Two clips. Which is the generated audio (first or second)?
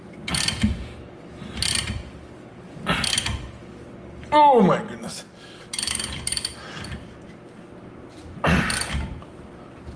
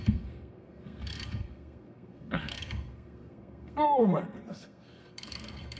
second